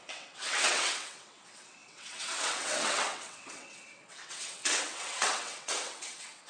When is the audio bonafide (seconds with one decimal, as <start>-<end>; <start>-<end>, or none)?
none